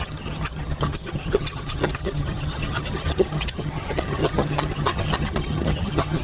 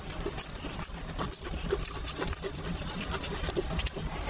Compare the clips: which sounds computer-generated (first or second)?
first